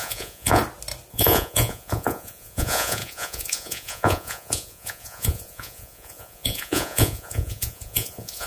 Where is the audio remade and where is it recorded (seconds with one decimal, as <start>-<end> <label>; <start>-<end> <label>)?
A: 0.0-0.6 remade; 0.6-1.1 recorded; 1.1-8.5 remade